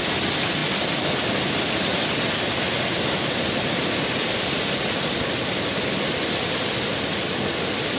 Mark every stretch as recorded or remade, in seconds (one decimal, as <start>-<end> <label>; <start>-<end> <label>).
0.0-8.0 recorded